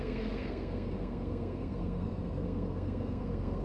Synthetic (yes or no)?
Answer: yes